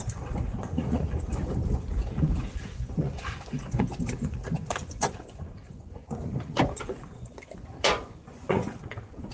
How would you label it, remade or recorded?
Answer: remade